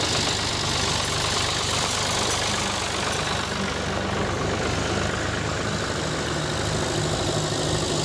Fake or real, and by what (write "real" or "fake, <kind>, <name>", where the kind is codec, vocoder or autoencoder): real